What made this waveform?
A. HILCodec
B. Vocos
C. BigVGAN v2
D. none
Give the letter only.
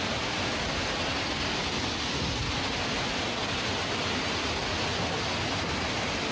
D